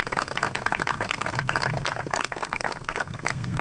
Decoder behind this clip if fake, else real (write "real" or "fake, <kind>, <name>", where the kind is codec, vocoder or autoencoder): fake, codec, SNAC